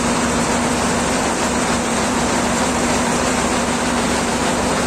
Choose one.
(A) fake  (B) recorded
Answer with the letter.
B